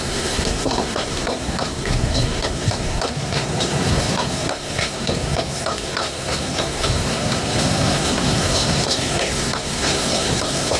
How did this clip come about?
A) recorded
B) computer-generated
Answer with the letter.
B